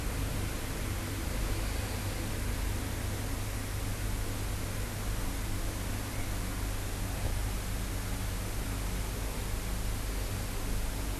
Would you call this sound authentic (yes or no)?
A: yes